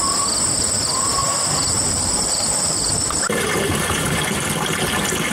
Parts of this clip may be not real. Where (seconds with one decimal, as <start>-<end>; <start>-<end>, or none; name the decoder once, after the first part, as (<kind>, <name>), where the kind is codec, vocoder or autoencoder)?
1.2-4.4 (vocoder, BigVGAN v2)